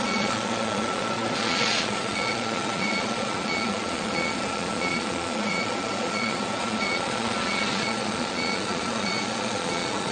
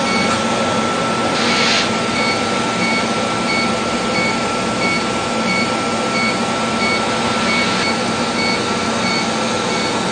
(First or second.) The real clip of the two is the second